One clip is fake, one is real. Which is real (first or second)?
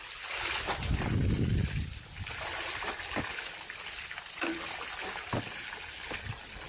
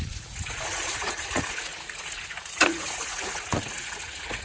first